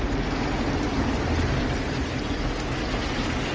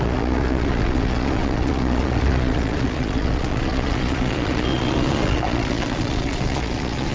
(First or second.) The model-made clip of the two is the second